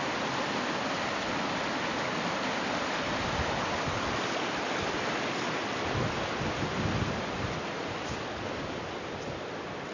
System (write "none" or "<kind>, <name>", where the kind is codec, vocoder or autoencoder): none